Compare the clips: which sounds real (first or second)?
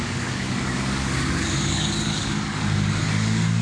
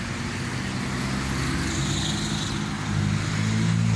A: second